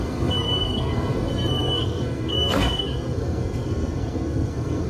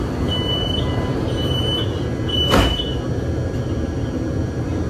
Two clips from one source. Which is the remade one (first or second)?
first